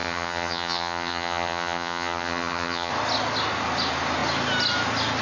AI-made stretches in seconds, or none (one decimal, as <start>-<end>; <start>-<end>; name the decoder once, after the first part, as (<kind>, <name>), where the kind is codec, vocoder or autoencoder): 0.0-2.9 (vocoder, HiFi-GAN)